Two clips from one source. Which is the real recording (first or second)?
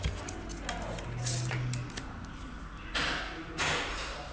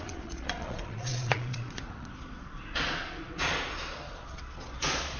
first